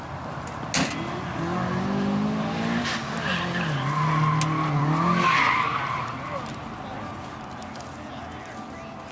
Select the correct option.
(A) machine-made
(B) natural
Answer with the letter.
B